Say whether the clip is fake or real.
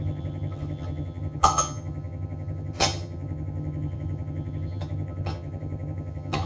fake